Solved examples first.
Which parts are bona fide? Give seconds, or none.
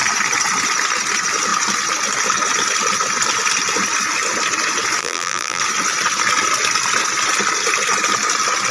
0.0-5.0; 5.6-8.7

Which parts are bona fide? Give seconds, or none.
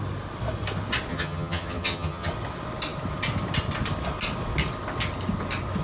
0.0-1.1; 2.3-5.8